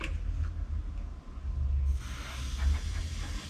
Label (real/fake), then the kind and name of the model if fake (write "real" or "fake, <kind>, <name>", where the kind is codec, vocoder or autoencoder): real